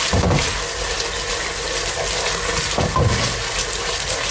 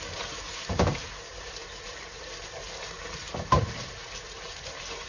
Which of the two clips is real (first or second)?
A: first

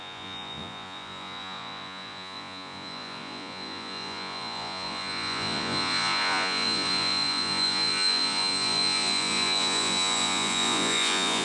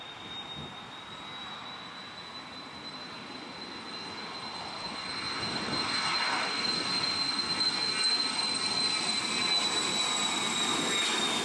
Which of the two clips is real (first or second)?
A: second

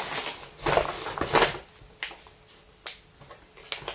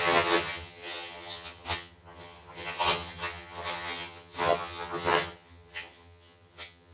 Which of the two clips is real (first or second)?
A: first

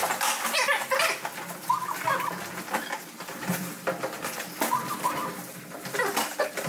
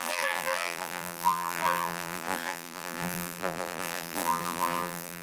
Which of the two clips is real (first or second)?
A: first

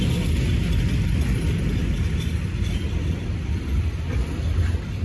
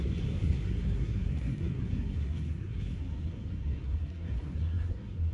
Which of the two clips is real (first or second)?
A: first